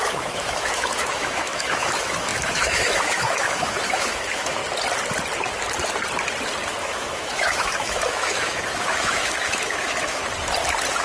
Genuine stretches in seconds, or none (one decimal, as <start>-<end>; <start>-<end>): 4.6-6.8; 10.2-11.0